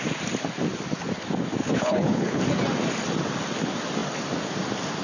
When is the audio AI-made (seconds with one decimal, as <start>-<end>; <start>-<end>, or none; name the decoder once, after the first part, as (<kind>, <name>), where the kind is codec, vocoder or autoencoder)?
1.6-2.4 (codec, HILCodec)